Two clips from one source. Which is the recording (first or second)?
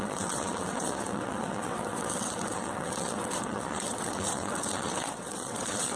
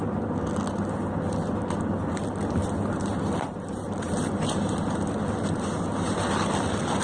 second